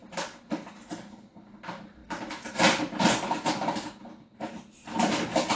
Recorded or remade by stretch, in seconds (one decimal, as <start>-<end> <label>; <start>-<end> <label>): 0.0-5.6 recorded